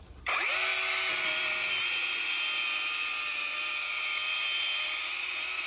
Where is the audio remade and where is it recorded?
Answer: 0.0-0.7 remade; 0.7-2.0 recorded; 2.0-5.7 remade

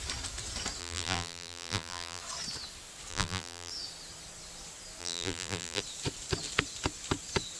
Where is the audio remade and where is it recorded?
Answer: 0.0-0.8 recorded; 0.8-2.2 remade; 2.2-3.1 recorded; 3.1-3.7 remade; 3.7-5.0 recorded; 5.0-5.8 remade; 5.8-7.6 recorded

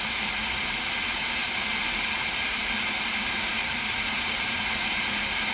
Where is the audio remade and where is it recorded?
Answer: 0.0-1.4 recorded; 1.4-3.8 remade; 3.8-5.5 recorded

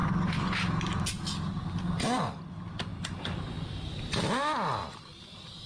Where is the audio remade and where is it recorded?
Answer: 0.0-4.8 recorded; 4.8-5.7 remade

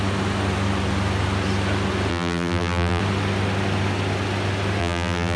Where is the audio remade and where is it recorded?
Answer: 0.0-2.1 recorded; 2.1-3.0 remade; 3.0-4.8 recorded; 4.8-5.4 remade